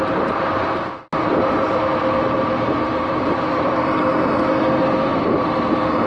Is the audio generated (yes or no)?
yes